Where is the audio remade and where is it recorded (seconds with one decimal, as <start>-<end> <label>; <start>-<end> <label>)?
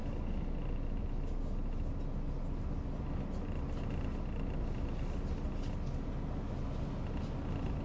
0.0-7.8 recorded